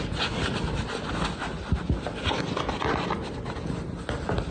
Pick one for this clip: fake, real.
real